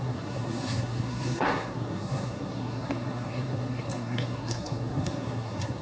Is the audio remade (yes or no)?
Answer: yes